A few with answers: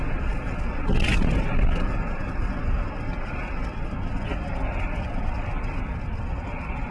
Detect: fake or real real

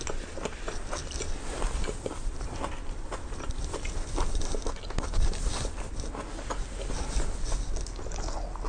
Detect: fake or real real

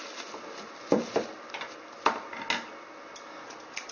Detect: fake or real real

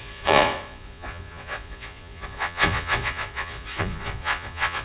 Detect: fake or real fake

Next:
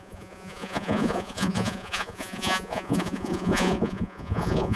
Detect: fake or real fake